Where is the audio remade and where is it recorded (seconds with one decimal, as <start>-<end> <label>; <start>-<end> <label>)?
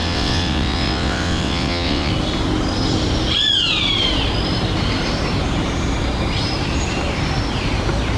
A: 0.0-2.1 remade; 2.1-8.2 recorded